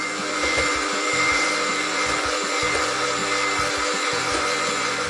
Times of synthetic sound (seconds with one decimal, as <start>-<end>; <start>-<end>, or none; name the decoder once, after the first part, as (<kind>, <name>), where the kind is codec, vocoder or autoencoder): 0.0-3.2 (vocoder, Vocos); 3.9-5.1